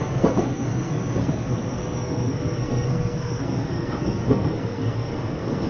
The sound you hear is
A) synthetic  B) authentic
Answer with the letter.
A